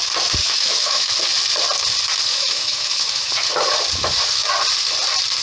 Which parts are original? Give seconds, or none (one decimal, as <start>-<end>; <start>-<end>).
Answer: 0.0-0.4; 1.1-2.3; 3.3-5.4